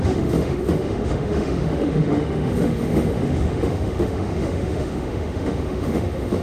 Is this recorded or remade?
remade